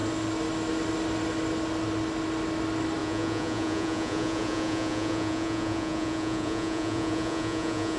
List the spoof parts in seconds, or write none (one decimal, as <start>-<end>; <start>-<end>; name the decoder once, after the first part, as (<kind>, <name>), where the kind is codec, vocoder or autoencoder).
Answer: 3.0-8.0 (vocoder, Vocos)